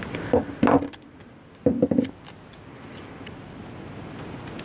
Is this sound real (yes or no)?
yes